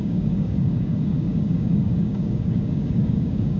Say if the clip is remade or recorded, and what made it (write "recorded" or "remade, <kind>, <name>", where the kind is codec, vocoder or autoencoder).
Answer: remade, codec, DAC